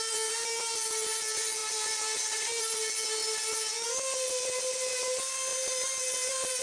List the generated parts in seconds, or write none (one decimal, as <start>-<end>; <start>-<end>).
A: none